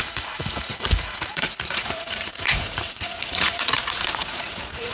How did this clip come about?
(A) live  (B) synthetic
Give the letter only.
B